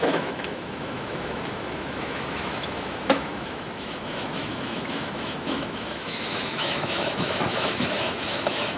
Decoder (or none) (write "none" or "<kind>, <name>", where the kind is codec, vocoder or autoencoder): autoencoder, DAC-VAE